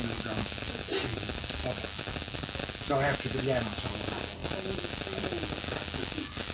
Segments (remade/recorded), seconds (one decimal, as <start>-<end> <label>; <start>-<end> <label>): 0.0-6.5 recorded